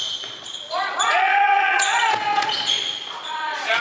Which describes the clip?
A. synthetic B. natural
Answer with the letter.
A